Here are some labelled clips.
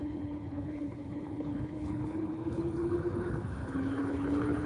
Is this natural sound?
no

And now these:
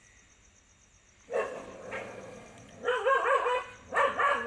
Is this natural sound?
yes